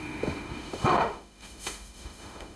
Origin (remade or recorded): remade